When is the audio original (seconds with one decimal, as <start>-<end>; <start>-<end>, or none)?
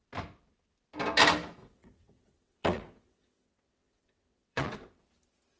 0.0-1.6; 5.0-5.6